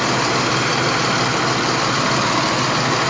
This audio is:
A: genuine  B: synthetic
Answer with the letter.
A